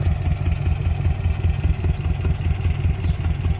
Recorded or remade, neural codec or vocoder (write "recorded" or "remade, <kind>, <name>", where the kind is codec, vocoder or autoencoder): recorded